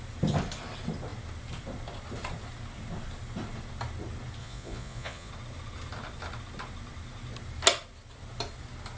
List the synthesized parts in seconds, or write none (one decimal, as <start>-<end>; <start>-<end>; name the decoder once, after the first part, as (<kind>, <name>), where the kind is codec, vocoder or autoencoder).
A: 4.4-5.3 (vocoder, Vocos)